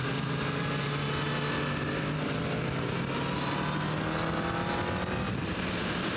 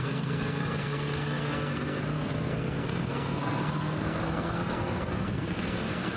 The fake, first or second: second